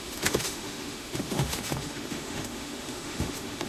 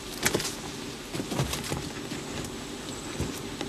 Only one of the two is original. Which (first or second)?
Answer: second